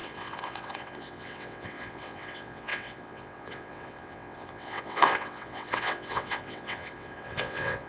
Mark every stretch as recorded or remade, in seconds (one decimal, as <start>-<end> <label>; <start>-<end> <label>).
0.0-7.9 remade